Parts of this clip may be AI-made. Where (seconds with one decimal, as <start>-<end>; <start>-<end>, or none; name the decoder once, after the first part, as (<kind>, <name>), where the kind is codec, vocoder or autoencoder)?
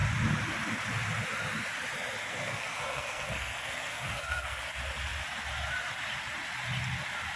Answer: 2.2-4.6 (codec, SNAC)